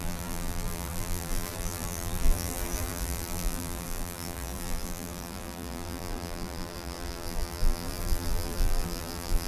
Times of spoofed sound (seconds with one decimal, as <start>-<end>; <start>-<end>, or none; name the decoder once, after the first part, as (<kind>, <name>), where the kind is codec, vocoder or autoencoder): 0.0-9.5 (vocoder, BigVGAN v2)